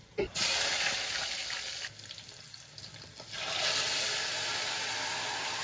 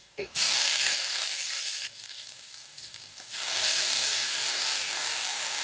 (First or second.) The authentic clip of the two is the first